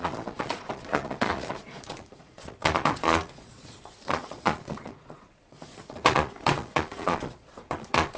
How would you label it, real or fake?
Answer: fake